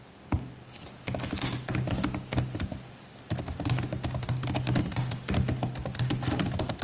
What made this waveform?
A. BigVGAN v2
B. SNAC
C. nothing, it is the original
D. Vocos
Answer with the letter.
C